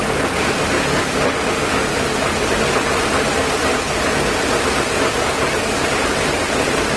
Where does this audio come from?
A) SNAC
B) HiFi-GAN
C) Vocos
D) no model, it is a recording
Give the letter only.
D